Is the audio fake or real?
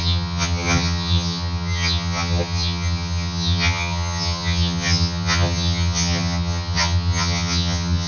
fake